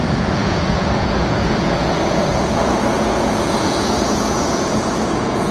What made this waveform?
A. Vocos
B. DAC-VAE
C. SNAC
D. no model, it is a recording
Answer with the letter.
A